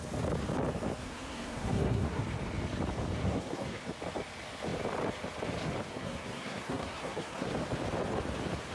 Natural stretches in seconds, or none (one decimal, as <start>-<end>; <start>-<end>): 0.0-1.0; 2.2-3.2; 3.8-5.9; 7.5-8.7